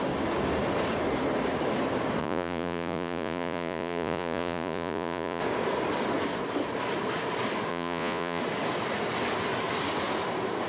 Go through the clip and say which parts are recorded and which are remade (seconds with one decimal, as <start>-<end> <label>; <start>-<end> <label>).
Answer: 0.0-2.2 recorded; 2.2-5.4 remade; 5.4-7.7 recorded; 7.7-8.4 remade; 8.4-10.7 recorded